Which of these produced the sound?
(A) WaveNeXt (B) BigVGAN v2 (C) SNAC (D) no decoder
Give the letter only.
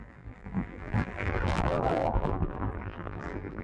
B